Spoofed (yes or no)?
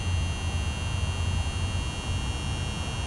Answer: no